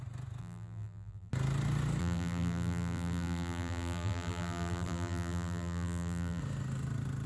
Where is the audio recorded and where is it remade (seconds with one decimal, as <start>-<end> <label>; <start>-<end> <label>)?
0.0-0.4 recorded; 0.4-1.3 remade; 1.3-2.0 recorded; 2.0-6.4 remade; 6.4-7.3 recorded